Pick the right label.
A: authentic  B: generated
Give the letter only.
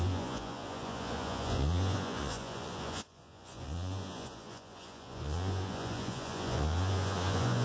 B